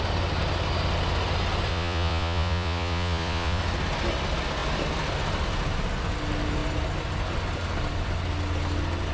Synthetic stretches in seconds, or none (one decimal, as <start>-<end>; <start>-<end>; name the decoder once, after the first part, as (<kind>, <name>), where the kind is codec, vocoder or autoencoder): 1.7-3.6 (vocoder, Vocos)